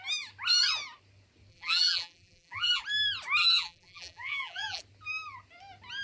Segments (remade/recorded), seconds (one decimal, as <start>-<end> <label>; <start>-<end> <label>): 0.0-1.5 recorded; 1.5-2.8 remade; 2.8-3.4 recorded; 3.4-4.8 remade; 4.8-6.0 recorded